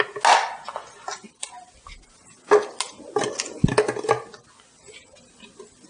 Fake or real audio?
real